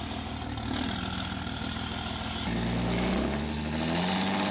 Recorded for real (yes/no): yes